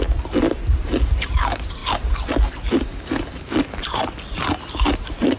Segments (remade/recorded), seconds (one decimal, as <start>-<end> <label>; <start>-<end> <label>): 0.0-5.4 recorded